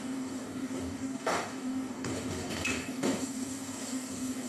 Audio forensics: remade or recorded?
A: remade